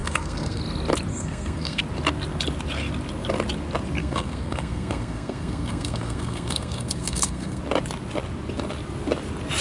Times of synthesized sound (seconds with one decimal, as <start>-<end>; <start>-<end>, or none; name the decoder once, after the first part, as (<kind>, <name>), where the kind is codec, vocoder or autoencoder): 0.0-0.6 (codec, SNAC); 1.1-1.8; 4.0-7.6